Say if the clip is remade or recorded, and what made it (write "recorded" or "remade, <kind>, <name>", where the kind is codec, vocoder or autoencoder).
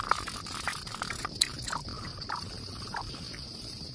remade, vocoder, BigVGAN v2